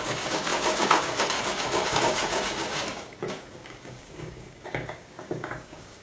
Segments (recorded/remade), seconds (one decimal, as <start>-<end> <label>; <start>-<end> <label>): 0.0-6.0 remade